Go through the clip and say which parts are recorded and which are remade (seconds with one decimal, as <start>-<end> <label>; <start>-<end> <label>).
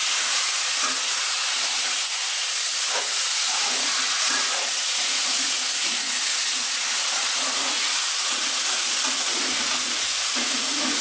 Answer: 0.0-11.0 remade